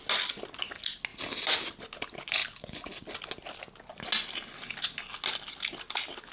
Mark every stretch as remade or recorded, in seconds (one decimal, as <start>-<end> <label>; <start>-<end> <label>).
0.0-6.3 recorded